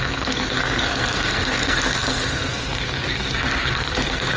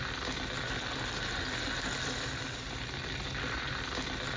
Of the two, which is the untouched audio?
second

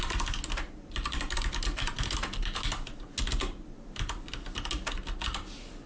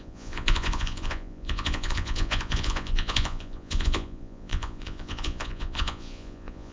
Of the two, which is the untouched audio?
first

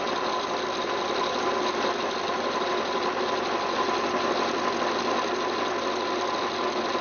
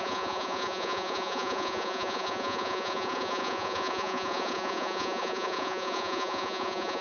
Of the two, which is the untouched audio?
first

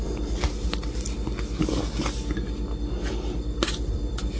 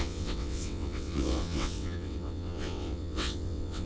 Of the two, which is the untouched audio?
first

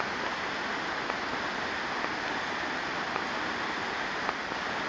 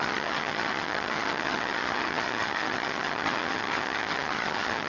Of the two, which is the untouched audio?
first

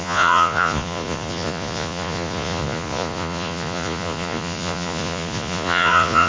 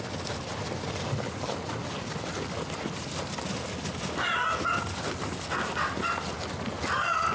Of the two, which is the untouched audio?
second